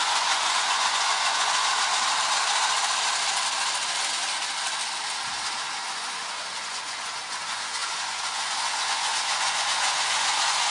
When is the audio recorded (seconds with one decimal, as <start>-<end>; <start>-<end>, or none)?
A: 1.7-5.9